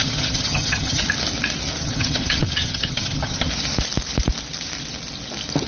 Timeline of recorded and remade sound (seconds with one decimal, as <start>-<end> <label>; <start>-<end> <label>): 0.0-1.0 remade; 1.0-1.8 recorded; 1.8-3.5 remade; 3.5-5.7 recorded